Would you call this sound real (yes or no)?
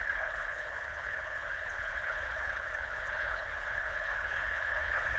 no